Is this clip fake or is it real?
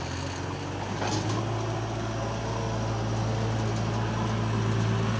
real